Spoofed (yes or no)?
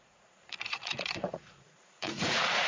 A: yes